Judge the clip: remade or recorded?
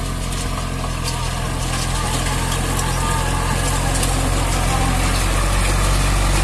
recorded